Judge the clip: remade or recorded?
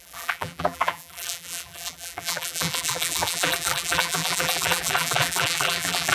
remade